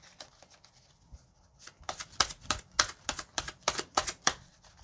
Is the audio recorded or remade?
recorded